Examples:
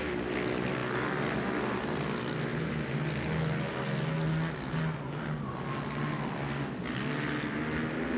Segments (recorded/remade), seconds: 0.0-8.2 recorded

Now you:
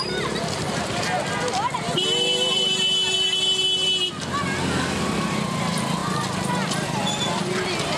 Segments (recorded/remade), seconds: 0.0-8.0 recorded

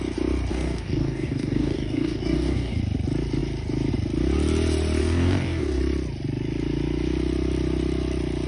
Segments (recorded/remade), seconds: 0.0-0.5 recorded; 0.5-2.8 remade; 2.8-5.0 recorded; 5.0-5.8 remade; 5.8-8.5 recorded